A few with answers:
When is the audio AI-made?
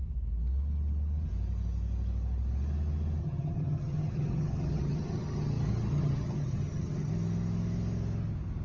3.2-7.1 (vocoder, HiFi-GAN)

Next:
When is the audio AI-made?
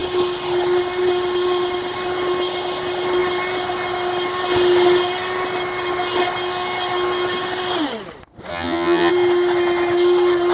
8.5-9.1 (vocoder, HiFi-GAN)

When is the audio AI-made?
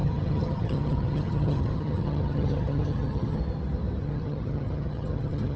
0.0-3.4 (vocoder, HiFi-GAN); 4.0-5.6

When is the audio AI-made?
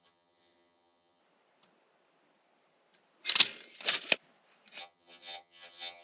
0.0-1.2 (vocoder, HiFi-GAN); 4.8-6.0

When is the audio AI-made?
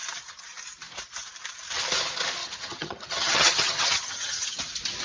2.4-4.6 (vocoder, HiFi-GAN)